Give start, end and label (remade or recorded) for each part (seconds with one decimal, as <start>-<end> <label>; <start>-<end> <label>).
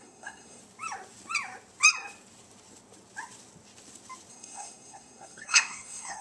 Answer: 0.0-0.6 remade; 0.6-4.3 recorded; 4.3-6.2 remade